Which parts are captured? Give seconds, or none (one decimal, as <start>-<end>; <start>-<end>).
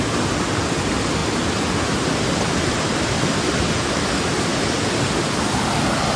0.0-1.2; 4.0-4.5; 5.2-6.2